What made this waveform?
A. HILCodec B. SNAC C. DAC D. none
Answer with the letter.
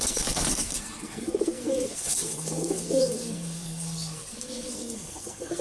B